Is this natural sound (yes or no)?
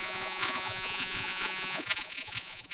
no